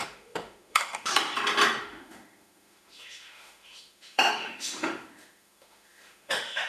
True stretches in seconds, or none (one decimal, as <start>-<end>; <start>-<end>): 1.1-1.8